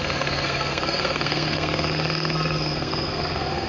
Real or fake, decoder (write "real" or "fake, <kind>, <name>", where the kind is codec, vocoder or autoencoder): fake, codec, SNAC